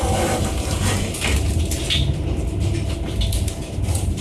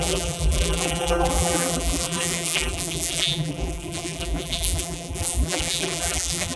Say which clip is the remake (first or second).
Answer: second